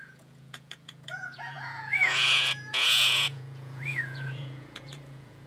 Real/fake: fake